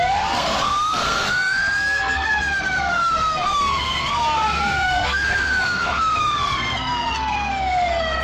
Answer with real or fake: fake